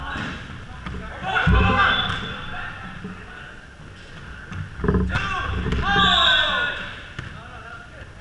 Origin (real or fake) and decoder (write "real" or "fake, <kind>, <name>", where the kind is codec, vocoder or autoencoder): real